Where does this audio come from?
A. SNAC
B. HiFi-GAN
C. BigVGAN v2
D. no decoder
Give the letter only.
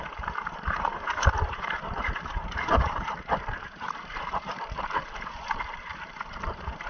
C